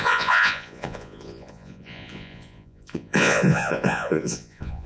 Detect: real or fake fake